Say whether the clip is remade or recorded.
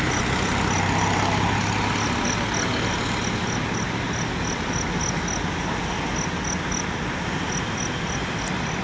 recorded